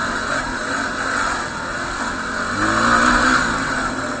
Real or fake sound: real